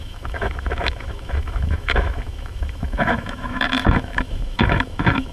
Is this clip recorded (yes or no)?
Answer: no